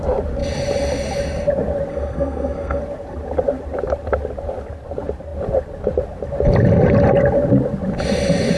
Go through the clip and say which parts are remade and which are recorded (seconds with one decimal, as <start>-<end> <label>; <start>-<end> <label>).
0.0-1.9 recorded; 1.9-2.8 remade; 2.8-8.6 recorded